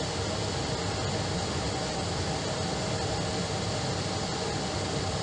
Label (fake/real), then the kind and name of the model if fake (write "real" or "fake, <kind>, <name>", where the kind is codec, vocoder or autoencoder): real